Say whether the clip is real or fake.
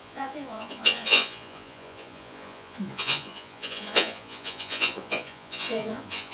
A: fake